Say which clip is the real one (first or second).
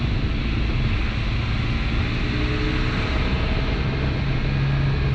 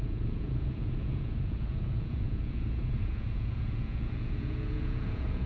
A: first